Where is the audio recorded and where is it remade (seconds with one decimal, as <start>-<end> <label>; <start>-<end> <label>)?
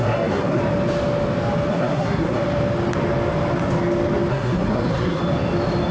0.0-0.6 remade; 0.6-1.7 recorded; 1.7-2.4 remade; 2.4-4.3 recorded; 4.3-5.2 remade; 5.2-5.9 recorded